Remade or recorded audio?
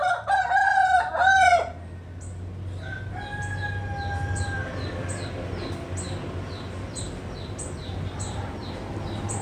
recorded